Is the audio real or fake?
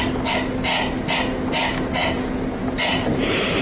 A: real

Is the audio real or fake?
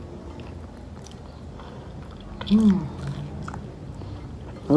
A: real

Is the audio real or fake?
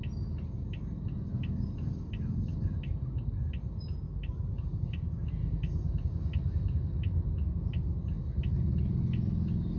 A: real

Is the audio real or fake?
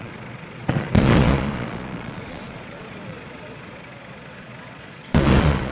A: fake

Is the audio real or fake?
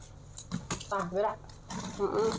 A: real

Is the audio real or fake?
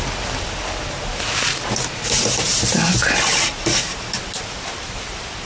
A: real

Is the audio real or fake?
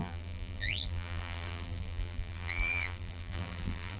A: fake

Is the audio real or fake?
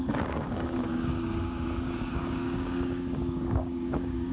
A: fake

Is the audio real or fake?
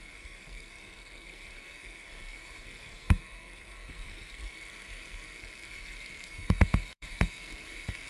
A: fake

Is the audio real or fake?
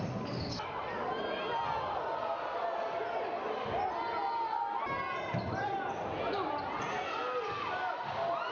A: real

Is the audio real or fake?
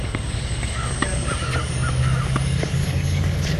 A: fake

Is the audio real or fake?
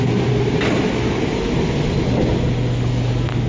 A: real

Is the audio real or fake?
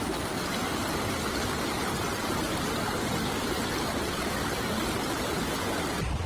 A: real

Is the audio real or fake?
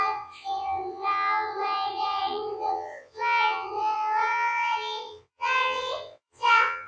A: fake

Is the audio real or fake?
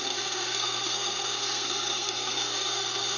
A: fake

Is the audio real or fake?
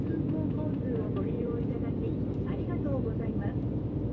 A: fake